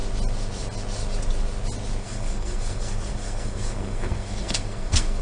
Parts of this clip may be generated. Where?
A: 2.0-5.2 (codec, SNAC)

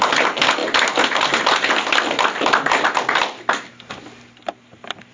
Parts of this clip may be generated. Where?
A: none